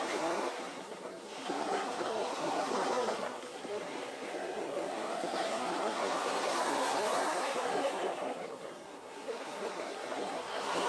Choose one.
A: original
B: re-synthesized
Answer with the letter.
B